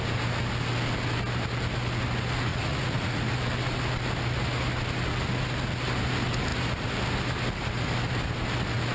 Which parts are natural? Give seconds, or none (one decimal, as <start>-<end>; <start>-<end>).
0.0-2.5; 3.2-8.9